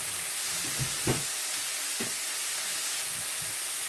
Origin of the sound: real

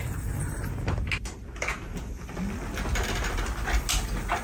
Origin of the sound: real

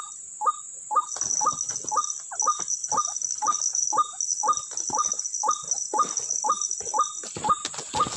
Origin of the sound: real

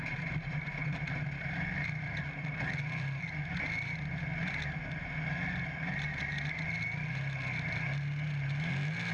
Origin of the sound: real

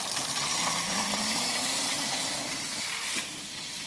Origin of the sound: real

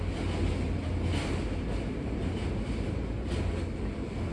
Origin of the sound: real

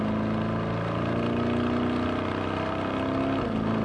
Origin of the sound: real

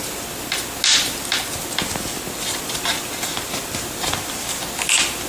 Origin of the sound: real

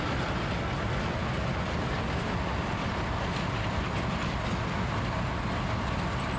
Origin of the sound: real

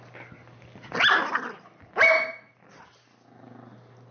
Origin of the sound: real